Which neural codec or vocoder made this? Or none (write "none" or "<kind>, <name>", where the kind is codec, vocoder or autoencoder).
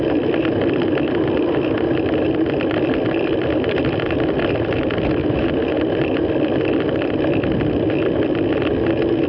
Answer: none